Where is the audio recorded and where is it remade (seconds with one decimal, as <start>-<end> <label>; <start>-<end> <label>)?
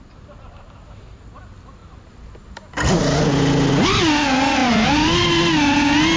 0.0-6.2 recorded